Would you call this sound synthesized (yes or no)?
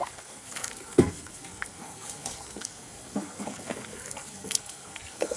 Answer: yes